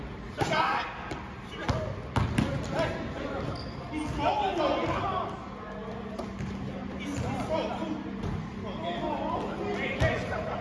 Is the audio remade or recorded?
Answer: recorded